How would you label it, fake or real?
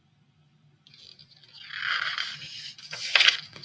real